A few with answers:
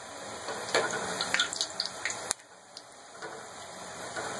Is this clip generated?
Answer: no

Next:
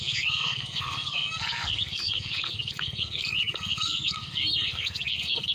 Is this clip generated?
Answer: yes